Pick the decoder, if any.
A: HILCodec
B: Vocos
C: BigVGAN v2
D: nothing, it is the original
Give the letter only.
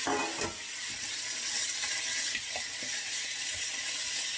D